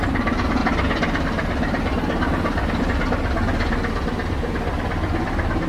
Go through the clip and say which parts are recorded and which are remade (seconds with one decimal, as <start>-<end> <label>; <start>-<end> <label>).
0.0-5.7 recorded